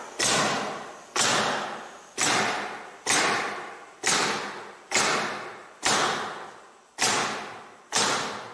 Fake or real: real